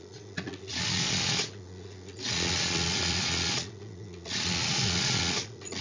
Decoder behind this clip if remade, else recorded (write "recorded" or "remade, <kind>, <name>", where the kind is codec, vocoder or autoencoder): remade, vocoder, Vocos